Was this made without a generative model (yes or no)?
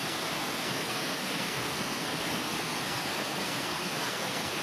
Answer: no